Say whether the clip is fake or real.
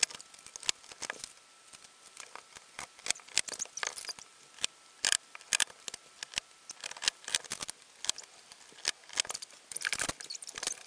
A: real